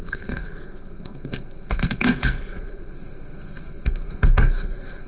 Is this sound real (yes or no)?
no